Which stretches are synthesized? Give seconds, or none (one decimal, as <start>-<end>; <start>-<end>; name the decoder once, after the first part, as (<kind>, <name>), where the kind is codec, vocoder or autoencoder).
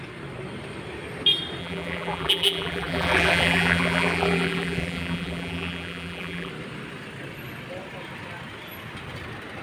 1.6-6.5 (vocoder, BigVGAN v2)